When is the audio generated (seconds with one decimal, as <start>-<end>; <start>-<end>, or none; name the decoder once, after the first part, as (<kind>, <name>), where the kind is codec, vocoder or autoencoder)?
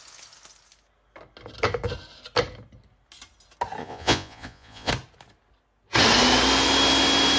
3.8-4.9 (vocoder, Vocos)